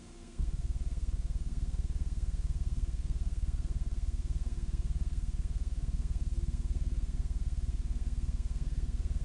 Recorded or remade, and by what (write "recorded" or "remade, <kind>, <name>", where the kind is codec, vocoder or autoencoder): remade, codec, SNAC